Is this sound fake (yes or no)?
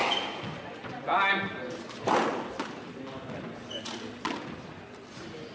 no